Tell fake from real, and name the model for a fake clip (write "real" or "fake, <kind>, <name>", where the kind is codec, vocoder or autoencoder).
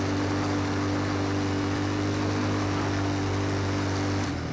real